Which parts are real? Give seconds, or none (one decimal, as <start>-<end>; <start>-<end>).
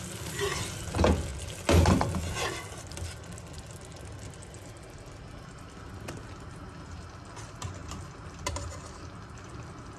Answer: 0.0-10.0